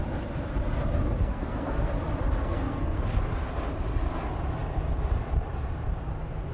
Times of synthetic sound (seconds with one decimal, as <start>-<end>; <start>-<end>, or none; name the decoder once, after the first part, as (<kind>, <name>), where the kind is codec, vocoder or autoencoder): 1.2-1.9 (codec, SNAC); 2.4-3.0